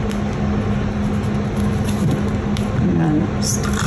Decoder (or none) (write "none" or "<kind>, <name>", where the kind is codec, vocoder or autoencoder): none